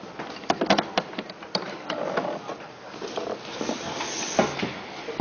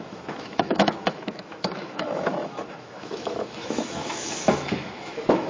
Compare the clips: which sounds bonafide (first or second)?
first